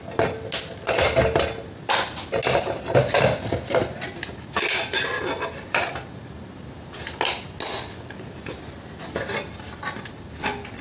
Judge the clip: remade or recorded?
recorded